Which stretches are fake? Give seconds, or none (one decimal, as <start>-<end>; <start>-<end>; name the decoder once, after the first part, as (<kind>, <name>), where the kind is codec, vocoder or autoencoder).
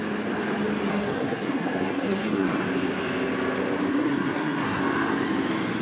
0.9-2.6 (codec, SNAC); 3.9-4.8